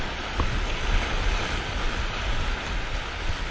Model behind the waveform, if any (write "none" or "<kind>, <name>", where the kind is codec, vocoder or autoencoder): none